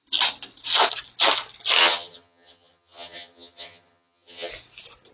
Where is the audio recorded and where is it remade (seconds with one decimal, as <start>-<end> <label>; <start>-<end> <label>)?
0.0-1.8 recorded; 1.8-4.5 remade; 4.5-5.1 recorded